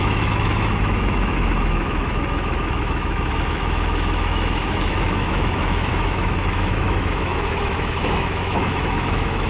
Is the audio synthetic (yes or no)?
yes